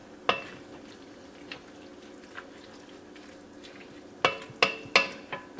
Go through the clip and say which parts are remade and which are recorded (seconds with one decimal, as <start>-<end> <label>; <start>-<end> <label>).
0.0-0.9 recorded; 0.9-1.9 remade; 1.9-5.6 recorded